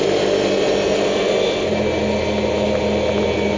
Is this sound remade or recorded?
recorded